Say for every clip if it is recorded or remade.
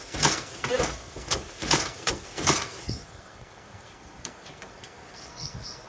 remade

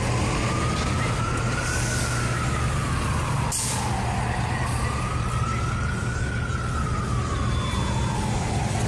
recorded